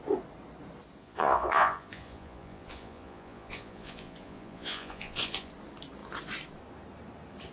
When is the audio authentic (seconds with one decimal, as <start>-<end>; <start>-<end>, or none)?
0.0-1.0; 5.5-7.5